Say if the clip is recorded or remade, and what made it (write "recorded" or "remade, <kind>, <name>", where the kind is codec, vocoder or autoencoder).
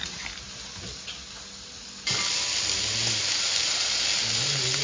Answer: recorded